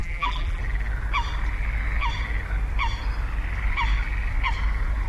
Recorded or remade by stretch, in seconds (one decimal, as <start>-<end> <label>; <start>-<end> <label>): 0.0-0.6 remade; 0.6-5.1 recorded